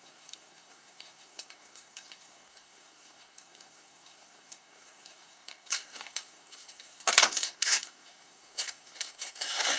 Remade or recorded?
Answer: remade